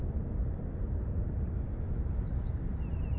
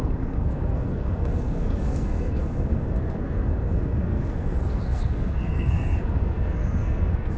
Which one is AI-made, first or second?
second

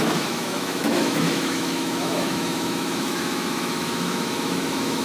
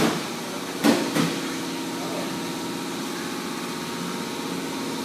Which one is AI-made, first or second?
first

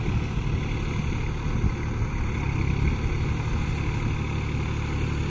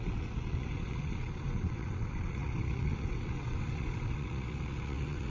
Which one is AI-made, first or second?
second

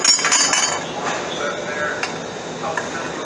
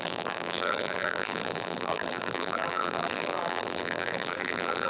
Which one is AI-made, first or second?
second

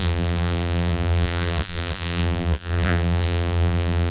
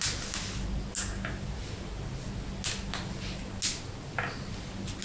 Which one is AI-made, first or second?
first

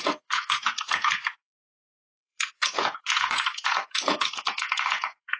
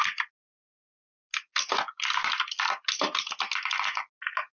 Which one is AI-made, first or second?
first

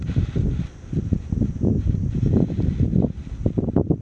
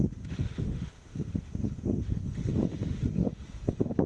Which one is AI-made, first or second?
second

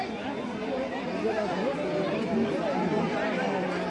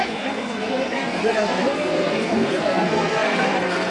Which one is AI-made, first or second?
second